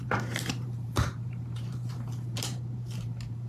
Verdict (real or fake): fake